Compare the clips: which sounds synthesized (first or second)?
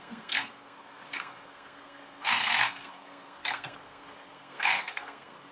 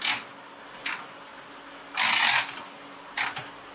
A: first